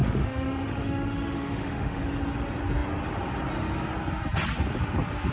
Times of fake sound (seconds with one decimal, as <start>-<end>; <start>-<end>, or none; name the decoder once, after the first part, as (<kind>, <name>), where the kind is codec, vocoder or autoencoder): 0.0-2.0 (autoencoder, DAC-VAE)